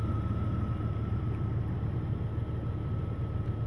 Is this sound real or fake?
real